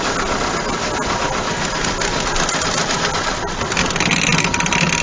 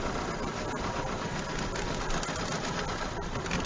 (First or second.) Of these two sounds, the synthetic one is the second